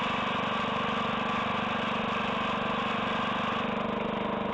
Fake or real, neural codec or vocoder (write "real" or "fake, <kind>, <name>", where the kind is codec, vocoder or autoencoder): real